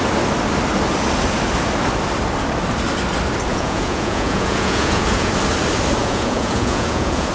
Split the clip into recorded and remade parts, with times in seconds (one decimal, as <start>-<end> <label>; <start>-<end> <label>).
0.0-3.5 recorded; 3.5-5.3 remade; 5.3-6.0 recorded; 6.0-7.3 remade